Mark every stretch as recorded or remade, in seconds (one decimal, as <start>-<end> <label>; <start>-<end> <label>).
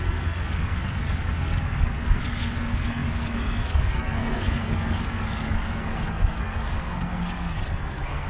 0.0-8.3 remade